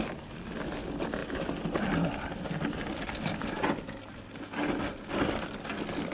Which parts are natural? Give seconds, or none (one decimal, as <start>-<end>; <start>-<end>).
0.0-6.1

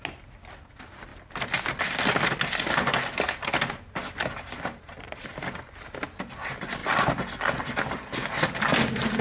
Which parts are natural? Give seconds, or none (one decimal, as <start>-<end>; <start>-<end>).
0.0-9.2

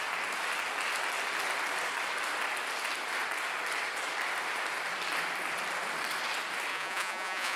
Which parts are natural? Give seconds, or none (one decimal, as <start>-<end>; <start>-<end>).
0.0-6.7